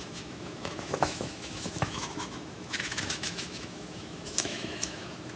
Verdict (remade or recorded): remade